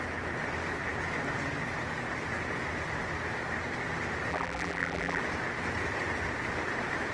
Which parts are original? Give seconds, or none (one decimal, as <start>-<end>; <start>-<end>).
0.0-4.3; 5.2-7.1